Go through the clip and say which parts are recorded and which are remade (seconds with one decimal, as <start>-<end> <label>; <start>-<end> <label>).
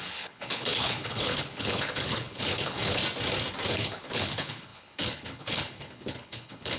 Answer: 0.0-3.0 remade; 3.0-3.7 recorded; 3.7-6.8 remade